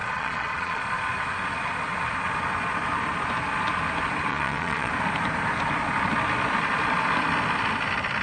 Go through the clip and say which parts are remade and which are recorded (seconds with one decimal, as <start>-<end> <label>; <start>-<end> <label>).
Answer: 0.0-0.8 remade; 0.8-4.3 recorded; 4.3-4.9 remade; 4.9-8.2 recorded